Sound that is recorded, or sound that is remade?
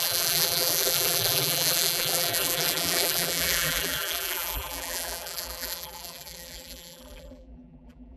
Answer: remade